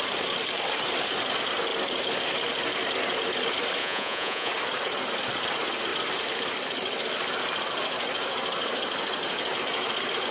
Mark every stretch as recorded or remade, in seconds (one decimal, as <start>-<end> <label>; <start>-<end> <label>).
0.0-3.8 recorded; 3.8-4.5 remade; 4.5-10.3 recorded